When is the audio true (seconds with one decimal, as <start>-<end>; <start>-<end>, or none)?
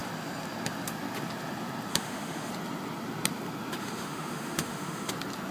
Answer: 0.0-1.9; 2.5-3.8; 5.1-5.5